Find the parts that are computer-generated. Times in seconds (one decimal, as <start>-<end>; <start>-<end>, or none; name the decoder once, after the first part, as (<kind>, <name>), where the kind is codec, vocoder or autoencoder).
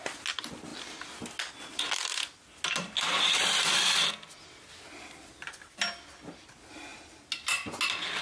none